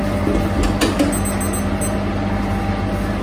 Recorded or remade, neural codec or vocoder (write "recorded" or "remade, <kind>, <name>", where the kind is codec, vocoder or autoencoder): recorded